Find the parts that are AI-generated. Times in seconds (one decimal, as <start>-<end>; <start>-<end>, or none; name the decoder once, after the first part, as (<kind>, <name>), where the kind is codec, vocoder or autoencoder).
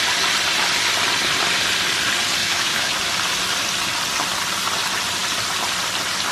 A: 2.4-3.0 (autoencoder, DAC-VAE)